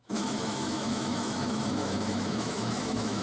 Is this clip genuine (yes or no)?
no